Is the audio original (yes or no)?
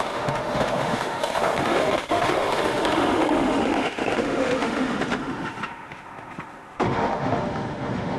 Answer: no